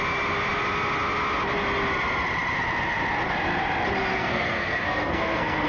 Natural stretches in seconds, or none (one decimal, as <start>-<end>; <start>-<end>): 0.0-4.1